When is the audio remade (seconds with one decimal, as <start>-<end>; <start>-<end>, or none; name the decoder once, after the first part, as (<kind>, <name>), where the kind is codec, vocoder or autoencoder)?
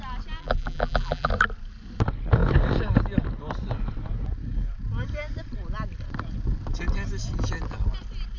0.4-1.3 (vocoder, BigVGAN v2)